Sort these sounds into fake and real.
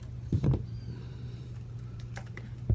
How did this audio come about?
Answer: fake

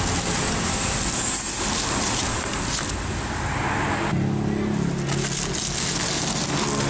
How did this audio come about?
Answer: real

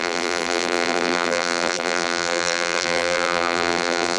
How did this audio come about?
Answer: fake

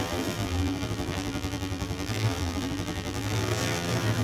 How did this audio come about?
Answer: fake